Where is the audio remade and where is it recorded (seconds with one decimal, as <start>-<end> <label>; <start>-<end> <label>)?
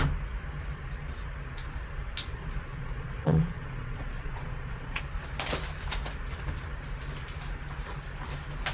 0.0-2.3 recorded; 2.3-5.0 remade; 5.0-8.7 recorded